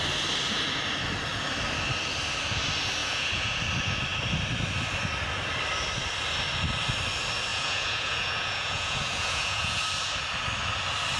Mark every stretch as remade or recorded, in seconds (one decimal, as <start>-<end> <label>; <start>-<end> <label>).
0.0-3.0 recorded; 3.0-3.6 remade; 3.6-7.5 recorded; 7.5-9.8 remade; 9.8-11.2 recorded